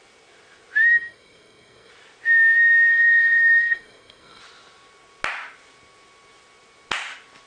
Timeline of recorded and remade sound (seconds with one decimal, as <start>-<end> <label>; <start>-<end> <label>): 0.0-0.9 recorded; 0.9-1.9 remade; 1.9-2.9 recorded; 2.9-4.4 remade; 4.4-7.5 recorded